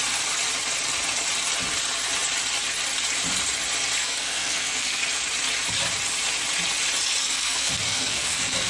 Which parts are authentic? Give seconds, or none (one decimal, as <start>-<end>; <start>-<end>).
0.0-4.0; 5.0-7.2